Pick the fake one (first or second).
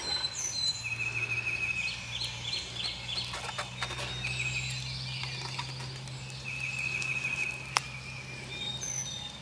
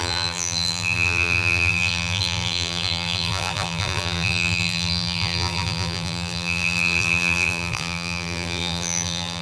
second